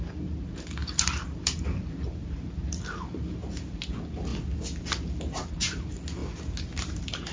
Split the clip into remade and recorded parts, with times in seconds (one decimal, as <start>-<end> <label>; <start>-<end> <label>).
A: 0.0-4.3 remade; 4.3-5.5 recorded; 5.5-6.2 remade; 6.2-6.8 recorded; 6.8-7.3 remade